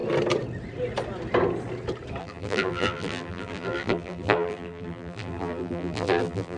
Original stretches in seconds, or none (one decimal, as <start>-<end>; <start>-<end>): 0.0-2.2